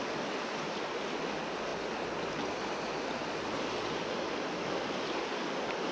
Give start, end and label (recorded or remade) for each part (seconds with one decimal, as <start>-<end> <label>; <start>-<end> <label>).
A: 0.0-5.9 recorded